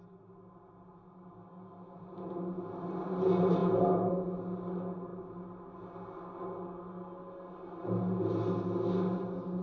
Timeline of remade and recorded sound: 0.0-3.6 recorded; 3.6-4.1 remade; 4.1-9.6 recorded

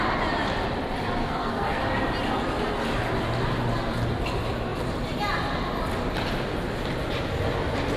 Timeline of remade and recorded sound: 0.0-1.2 recorded; 1.2-1.8 remade; 1.8-8.0 recorded

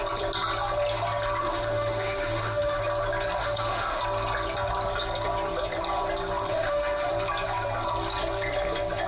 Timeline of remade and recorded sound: 0.0-1.4 recorded; 1.4-2.8 remade; 2.8-3.4 recorded; 3.4-4.0 remade; 4.0-6.5 recorded; 6.5-7.1 remade; 7.1-9.1 recorded

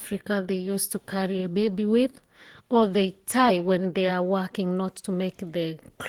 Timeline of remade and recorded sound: 0.0-4.1 remade; 4.1-6.1 recorded